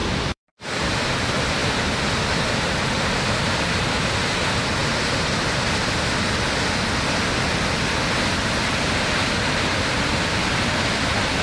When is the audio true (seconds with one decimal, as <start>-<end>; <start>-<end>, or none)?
0.8-11.4

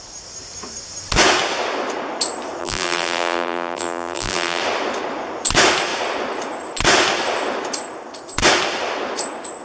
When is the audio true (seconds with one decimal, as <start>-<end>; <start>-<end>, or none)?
0.0-2.6; 4.6-9.6

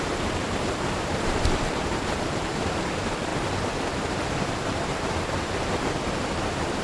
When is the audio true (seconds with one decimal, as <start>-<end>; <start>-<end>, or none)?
3.3-4.4

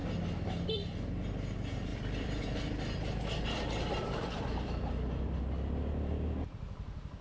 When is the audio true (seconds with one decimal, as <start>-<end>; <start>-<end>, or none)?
0.0-1.9; 5.4-7.2

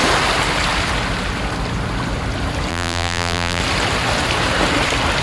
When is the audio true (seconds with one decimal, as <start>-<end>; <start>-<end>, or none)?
0.0-2.7; 3.6-5.2

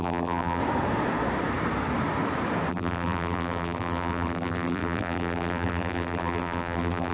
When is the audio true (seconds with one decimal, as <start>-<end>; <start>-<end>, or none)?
0.6-2.7